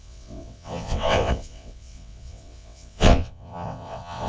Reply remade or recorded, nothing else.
remade